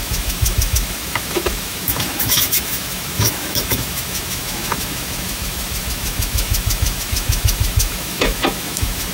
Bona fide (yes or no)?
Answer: no